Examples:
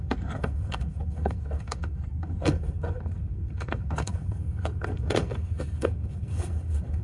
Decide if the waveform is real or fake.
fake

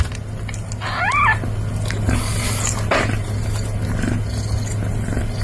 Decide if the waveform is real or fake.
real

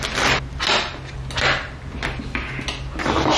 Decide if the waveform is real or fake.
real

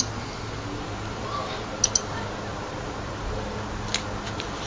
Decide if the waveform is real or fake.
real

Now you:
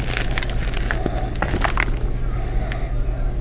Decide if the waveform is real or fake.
real